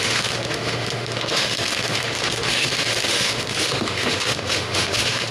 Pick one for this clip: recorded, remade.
remade